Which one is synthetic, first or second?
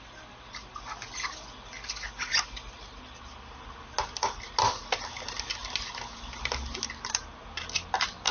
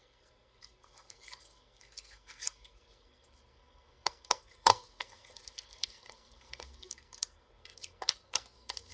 second